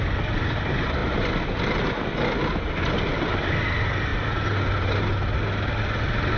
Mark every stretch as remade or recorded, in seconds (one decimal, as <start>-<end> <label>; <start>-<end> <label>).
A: 0.0-6.4 recorded